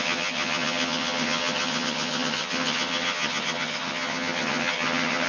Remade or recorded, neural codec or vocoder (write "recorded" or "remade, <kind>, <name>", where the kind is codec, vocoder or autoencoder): remade, vocoder, HiFi-GAN